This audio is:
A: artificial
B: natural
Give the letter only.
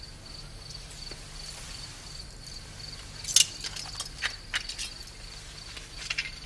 B